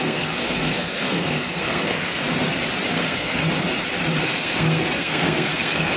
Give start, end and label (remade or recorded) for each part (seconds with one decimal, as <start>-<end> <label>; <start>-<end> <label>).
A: 0.0-2.2 remade; 2.2-2.9 recorded; 2.9-3.4 remade; 3.4-4.2 recorded; 4.2-6.0 remade